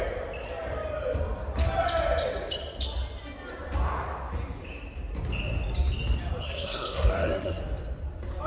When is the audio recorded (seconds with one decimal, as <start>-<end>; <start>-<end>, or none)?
0.0-6.4; 7.6-8.5